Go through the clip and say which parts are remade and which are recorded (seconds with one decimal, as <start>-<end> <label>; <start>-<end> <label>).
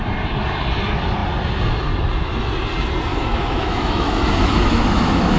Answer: 0.0-3.1 recorded; 3.1-5.4 remade